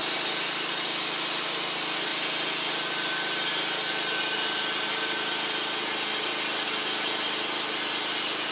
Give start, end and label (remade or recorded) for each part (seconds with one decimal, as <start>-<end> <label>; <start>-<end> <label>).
0.0-8.5 recorded